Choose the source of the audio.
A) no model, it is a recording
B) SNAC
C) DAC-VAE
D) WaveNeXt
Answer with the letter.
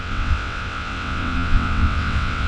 D